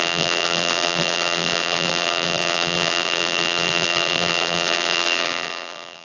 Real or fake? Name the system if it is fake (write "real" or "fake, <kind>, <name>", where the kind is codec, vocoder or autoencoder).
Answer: fake, vocoder, BigVGAN v2